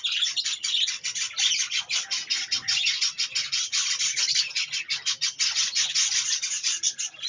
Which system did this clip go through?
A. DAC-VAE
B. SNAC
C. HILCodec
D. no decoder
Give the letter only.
D